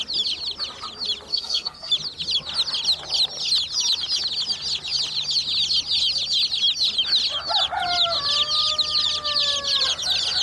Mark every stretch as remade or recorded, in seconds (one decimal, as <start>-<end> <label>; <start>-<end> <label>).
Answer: 0.0-1.3 recorded; 1.3-1.9 remade; 1.9-10.4 recorded